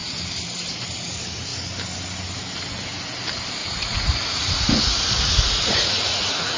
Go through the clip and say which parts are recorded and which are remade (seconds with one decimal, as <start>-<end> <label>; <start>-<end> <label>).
0.0-3.6 recorded; 3.6-6.6 remade